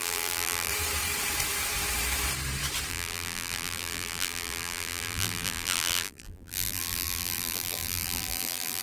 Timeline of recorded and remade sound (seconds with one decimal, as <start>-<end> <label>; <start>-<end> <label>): 0.0-0.7 remade; 0.7-2.9 recorded; 2.9-8.8 remade